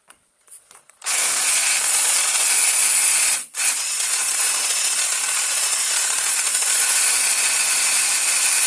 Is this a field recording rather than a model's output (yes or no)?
no